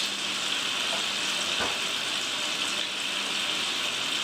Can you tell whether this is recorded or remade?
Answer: recorded